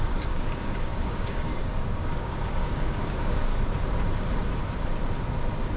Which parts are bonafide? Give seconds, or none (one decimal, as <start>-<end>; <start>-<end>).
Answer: 3.5-5.8